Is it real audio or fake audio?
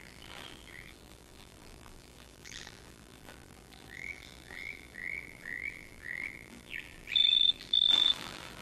fake